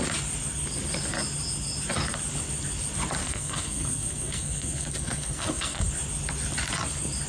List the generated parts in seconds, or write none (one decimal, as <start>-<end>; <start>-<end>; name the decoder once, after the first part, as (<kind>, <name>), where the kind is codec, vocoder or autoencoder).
3.2-5.9 (codec, SNAC)